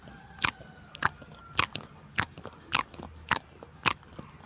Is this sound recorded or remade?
recorded